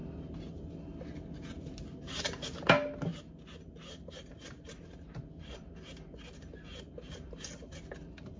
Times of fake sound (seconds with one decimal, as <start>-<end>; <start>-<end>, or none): none